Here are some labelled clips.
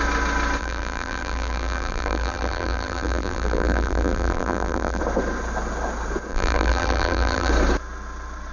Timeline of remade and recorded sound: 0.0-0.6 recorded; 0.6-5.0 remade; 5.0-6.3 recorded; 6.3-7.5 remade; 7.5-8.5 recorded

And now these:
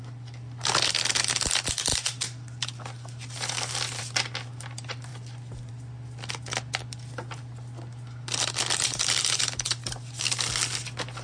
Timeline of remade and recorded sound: 0.0-11.2 recorded

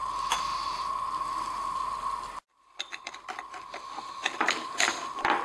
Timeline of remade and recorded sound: 0.0-0.5 remade; 0.5-2.8 recorded; 2.8-5.4 remade

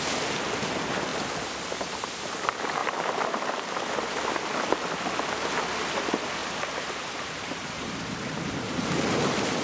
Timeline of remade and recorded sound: 0.0-2.8 recorded; 2.8-3.5 remade; 3.5-6.4 recorded; 6.4-9.2 remade; 9.2-9.6 recorded

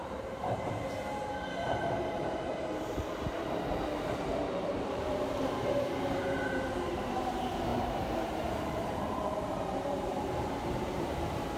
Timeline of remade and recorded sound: 0.0-11.6 remade